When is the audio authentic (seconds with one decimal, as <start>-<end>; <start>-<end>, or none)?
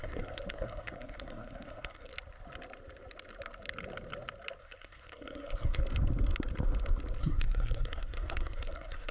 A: 2.1-4.6; 5.8-7.2